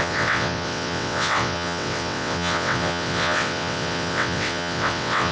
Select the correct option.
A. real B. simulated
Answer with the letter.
B